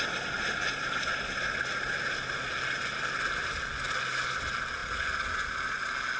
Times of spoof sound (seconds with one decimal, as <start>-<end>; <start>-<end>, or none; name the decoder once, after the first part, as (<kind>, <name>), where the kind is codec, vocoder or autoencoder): none